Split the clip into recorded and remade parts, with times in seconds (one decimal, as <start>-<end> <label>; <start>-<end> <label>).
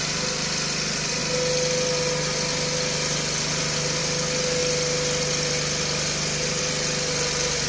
0.0-7.7 recorded